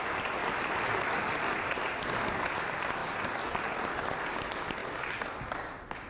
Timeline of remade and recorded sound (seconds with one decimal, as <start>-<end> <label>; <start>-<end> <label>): 0.0-0.4 recorded; 0.4-1.3 remade; 1.3-4.8 recorded; 4.8-5.3 remade; 5.3-6.1 recorded